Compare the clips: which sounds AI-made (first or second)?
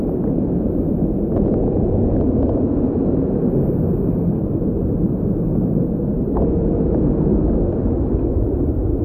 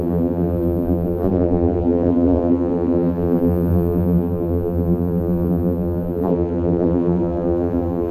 second